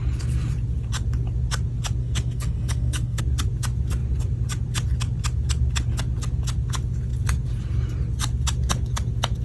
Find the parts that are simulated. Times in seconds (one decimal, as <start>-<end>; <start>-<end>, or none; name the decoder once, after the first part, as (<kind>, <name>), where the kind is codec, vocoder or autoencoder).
2.0-3.2 (codec, SNAC)